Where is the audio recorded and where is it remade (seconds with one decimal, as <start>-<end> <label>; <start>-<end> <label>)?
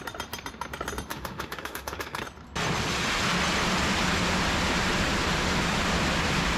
0.0-1.1 recorded; 1.1-2.2 remade; 2.2-6.6 recorded